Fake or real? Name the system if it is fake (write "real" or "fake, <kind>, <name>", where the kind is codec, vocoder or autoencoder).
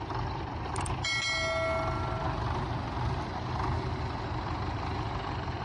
real